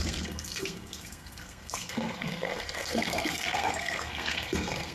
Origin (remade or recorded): remade